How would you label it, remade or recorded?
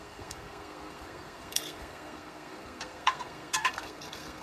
remade